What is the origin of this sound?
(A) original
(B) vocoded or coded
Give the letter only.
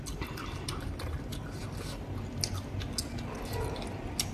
A